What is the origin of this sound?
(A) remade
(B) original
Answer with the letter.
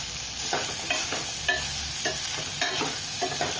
B